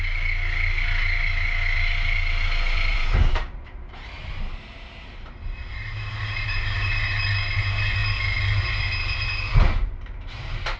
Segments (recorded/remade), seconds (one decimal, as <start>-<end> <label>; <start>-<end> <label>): 0.0-2.9 recorded; 2.9-7.2 remade; 7.2-10.8 recorded